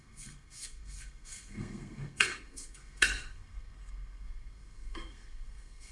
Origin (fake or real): fake